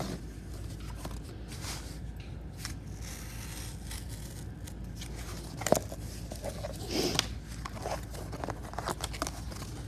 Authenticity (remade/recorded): recorded